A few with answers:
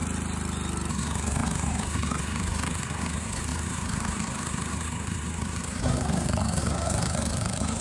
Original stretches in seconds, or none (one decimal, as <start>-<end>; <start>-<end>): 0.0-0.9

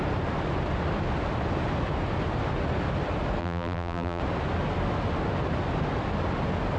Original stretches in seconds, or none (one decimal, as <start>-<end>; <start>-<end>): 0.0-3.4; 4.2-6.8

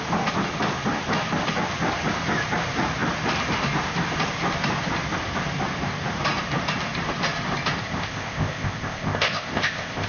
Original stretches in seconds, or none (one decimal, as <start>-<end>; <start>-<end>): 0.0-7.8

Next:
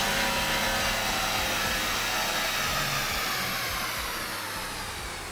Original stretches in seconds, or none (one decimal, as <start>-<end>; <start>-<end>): 0.0-5.3